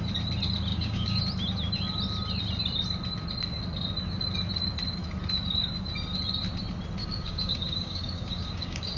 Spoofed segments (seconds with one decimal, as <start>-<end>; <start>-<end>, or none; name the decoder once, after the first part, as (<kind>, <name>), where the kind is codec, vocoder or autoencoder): 0.7-1.2 (codec, DAC); 7.0-9.0